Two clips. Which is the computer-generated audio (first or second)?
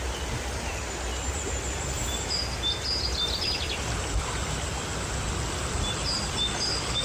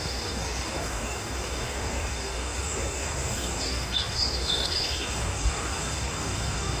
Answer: second